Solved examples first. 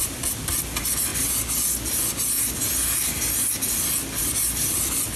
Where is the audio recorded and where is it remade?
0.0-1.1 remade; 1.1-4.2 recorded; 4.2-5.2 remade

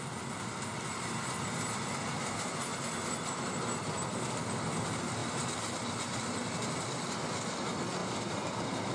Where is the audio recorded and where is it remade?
0.0-2.7 recorded; 2.7-3.3 remade; 3.3-8.0 recorded; 8.0-8.9 remade

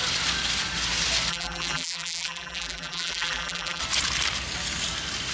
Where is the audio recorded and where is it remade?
0.0-1.3 recorded; 1.3-3.8 remade; 3.8-5.3 recorded

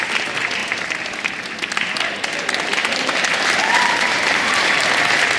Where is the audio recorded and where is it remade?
0.0-2.8 recorded; 2.8-5.0 remade; 5.0-5.4 recorded

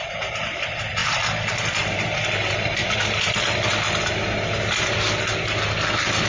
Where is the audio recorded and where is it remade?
0.0-2.8 remade; 2.8-6.3 recorded

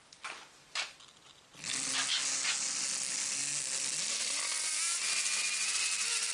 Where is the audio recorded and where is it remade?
0.0-4.9 recorded; 4.9-6.3 remade